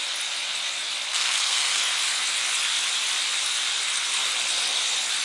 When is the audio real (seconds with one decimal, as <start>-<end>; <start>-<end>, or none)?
0.0-1.1; 1.8-5.2